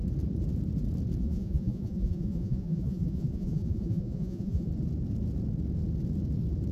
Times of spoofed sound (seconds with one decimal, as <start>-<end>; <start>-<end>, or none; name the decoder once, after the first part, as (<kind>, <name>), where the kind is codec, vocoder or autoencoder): 1.2-4.7 (vocoder, Vocos)